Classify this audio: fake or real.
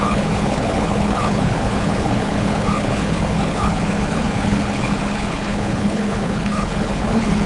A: fake